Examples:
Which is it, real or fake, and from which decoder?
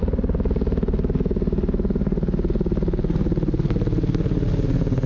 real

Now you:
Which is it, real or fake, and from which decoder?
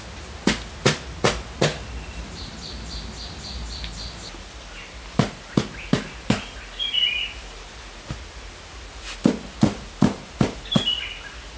real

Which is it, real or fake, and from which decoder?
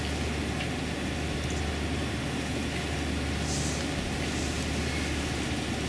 real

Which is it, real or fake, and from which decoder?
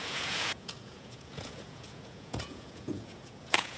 fake, vocoder, Vocos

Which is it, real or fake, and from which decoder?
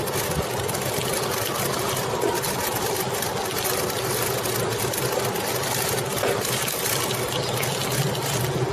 real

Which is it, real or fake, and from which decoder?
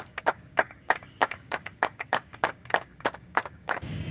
fake, codec, DAC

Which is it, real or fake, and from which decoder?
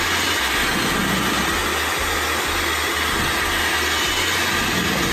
real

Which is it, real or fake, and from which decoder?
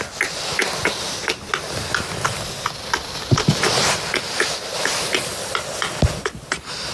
real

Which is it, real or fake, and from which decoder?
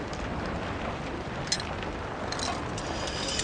real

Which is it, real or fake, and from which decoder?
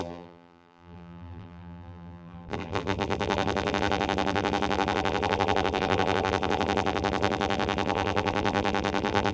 fake, vocoder, BigVGAN v2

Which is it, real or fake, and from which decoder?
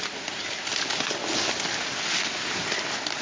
real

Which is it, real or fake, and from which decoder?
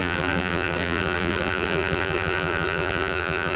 fake, vocoder, BigVGAN v2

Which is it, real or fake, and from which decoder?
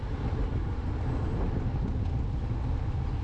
real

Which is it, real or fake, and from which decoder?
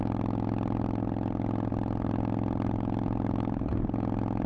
real